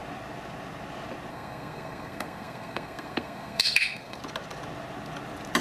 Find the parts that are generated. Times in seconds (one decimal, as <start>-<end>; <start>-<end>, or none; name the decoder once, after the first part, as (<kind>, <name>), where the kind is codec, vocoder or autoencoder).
1.3-4.2 (codec, SNAC)